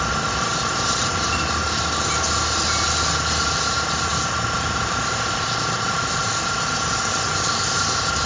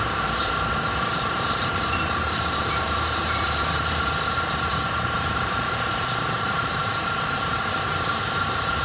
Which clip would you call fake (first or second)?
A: second